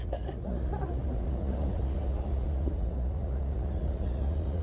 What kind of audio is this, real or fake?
fake